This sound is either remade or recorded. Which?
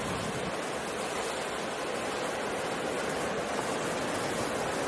recorded